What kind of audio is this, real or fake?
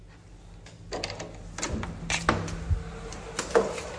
real